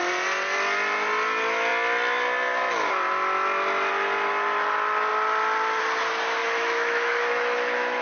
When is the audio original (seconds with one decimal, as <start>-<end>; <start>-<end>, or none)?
0.0-6.4